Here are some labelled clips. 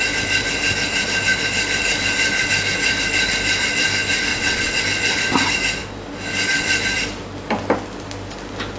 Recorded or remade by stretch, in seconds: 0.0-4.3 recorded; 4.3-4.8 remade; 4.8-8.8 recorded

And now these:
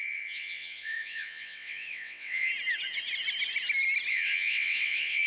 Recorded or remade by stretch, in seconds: 0.0-2.5 remade; 2.5-4.1 recorded; 4.1-5.3 remade

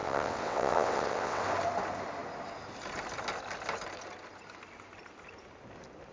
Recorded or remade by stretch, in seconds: 0.0-1.4 remade; 1.4-6.1 recorded

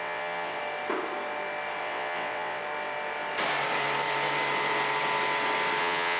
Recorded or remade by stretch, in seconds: 0.0-0.6 remade; 0.6-1.8 recorded; 1.8-2.6 remade; 2.6-5.8 recorded; 5.8-6.2 remade

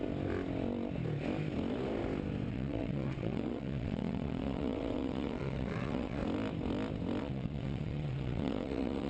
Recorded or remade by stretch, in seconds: 0.0-2.5 recorded; 2.5-6.2 remade; 6.2-7.2 recorded; 7.2-9.1 remade

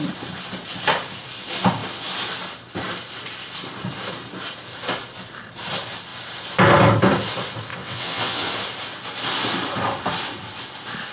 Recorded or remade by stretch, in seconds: 0.0-7.7 recorded; 7.7-8.5 remade; 8.5-11.1 recorded

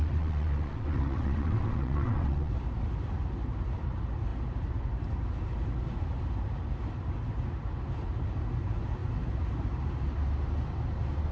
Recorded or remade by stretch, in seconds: 0.0-2.5 remade; 2.5-11.3 recorded

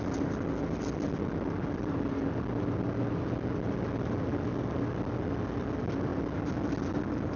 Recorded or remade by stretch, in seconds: 0.0-7.4 recorded